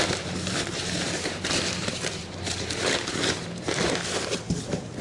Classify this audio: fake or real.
fake